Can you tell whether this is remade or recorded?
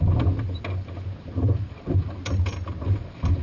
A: recorded